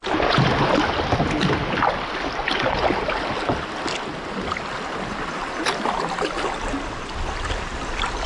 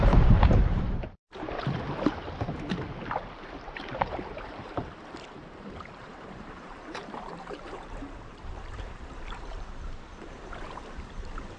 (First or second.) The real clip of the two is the first